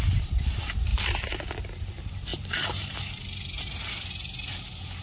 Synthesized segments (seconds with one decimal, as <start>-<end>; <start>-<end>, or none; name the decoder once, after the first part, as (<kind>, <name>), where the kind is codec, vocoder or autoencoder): 0.0-5.0 (vocoder, BigVGAN v2)

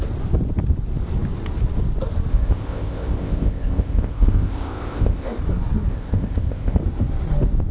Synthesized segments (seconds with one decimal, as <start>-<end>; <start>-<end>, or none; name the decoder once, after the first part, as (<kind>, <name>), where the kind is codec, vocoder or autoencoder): 2.3-5.4 (codec, ZipCodec); 5.9-6.8

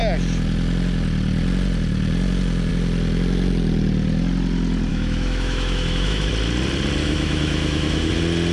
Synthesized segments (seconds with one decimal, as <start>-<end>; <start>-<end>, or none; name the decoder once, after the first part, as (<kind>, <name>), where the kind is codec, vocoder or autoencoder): 4.9-6.3 (autoencoder, DAC-VAE); 7.0-8.1

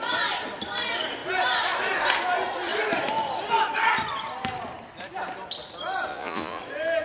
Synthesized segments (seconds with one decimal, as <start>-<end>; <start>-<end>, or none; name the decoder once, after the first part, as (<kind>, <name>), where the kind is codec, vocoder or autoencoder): 6.1-6.6 (vocoder, Vocos)

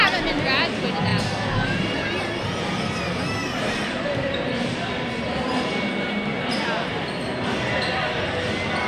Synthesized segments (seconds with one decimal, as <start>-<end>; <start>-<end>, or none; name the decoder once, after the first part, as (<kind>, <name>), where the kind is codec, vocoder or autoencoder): 3.4-6.5 (vocoder, BigVGAN v2)